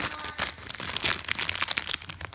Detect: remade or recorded recorded